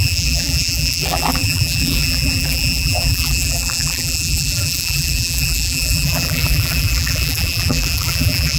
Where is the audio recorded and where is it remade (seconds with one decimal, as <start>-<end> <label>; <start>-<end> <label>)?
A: 0.0-8.6 remade